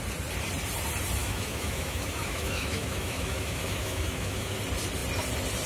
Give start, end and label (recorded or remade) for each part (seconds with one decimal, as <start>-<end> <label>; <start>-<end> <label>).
0.0-1.2 recorded; 1.2-4.6 remade; 4.6-5.7 recorded